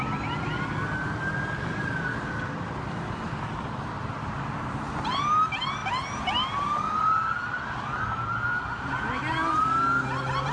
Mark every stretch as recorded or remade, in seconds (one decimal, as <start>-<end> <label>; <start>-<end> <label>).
0.0-10.5 recorded